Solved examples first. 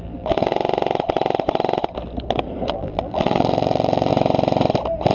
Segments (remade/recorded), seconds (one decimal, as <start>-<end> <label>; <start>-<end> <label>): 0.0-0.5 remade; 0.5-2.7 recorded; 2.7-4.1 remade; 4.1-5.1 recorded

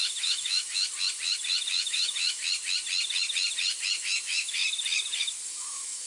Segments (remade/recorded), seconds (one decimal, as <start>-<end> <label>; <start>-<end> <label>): 0.0-0.8 remade; 0.8-1.8 recorded; 1.8-2.4 remade; 2.4-4.0 recorded; 4.0-4.6 remade; 4.6-5.5 recorded; 5.5-6.1 remade

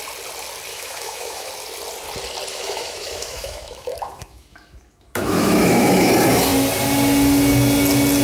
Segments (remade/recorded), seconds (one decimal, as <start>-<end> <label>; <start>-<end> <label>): 0.0-0.7 recorded; 0.7-1.5 remade; 1.5-2.5 recorded; 2.5-6.1 remade; 6.1-8.2 recorded

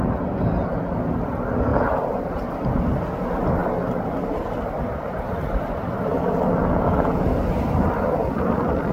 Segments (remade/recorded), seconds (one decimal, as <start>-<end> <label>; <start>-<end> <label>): 0.0-1.7 recorded; 1.7-2.7 remade; 2.7-8.9 recorded

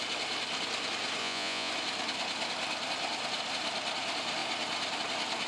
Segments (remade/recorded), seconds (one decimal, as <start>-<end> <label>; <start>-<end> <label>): 0.0-1.2 recorded; 1.2-1.7 remade; 1.7-5.5 recorded